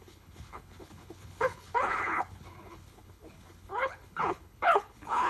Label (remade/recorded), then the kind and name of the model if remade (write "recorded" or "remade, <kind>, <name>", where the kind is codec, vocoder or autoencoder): remade, codec, HILCodec